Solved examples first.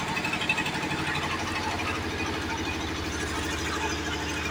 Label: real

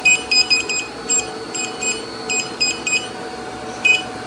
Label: real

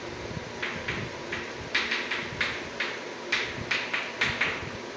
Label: real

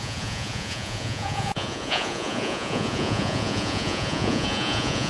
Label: fake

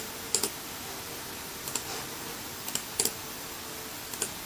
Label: real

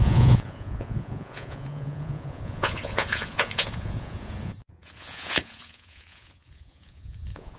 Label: fake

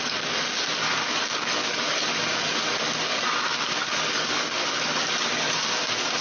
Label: fake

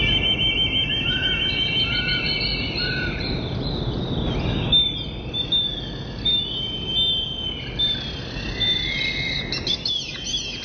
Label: real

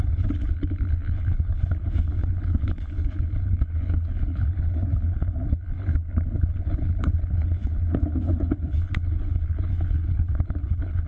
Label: fake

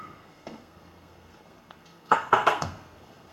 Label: fake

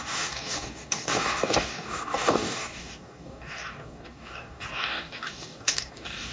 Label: fake